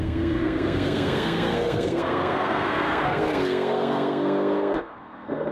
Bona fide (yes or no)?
no